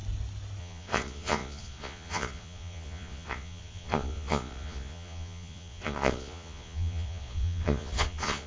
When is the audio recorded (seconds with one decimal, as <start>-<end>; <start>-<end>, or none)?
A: 0.0-0.6